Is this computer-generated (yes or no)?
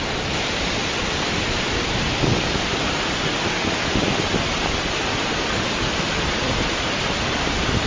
no